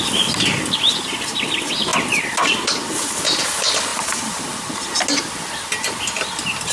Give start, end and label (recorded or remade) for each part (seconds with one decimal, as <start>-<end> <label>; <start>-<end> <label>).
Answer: 0.0-6.7 recorded